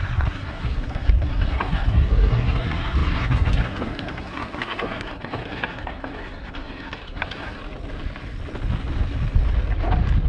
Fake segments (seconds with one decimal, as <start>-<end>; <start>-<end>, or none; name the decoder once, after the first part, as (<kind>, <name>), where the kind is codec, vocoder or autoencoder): 0.0-7.6 (codec, SNAC)